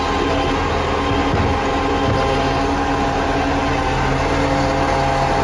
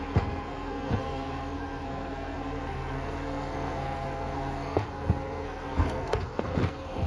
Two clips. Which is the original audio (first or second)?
first